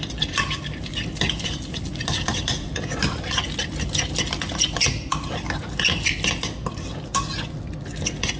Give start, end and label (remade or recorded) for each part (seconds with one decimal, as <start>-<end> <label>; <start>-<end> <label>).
0.0-8.4 recorded